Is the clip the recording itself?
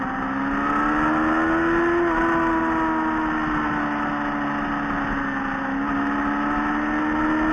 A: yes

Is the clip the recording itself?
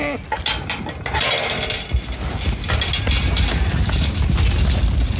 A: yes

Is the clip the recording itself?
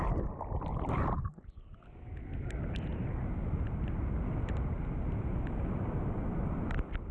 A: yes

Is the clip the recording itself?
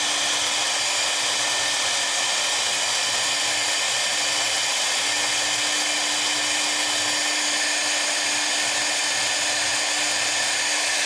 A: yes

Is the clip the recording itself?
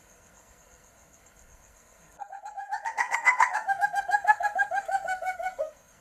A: no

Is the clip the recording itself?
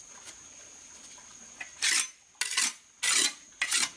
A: yes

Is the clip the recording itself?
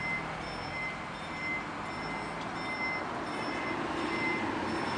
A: yes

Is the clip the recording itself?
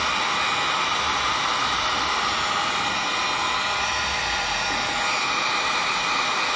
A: yes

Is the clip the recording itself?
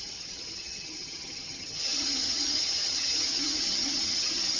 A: no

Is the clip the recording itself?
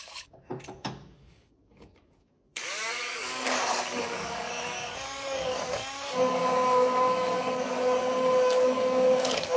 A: no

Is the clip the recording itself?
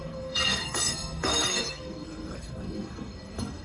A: no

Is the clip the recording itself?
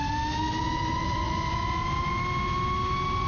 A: yes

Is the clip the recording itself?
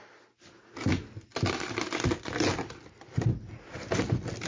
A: yes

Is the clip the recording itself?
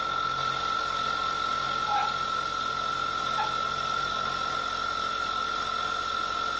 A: yes